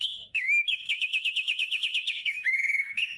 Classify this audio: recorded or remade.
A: remade